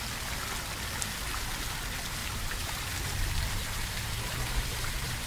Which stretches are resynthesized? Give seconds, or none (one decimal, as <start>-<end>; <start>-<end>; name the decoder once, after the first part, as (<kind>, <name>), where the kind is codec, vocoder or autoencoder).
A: 2.2-5.3 (vocoder, BigVGAN v2)